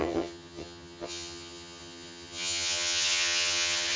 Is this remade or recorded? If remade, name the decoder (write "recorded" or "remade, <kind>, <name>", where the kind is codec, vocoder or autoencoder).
remade, vocoder, HiFi-GAN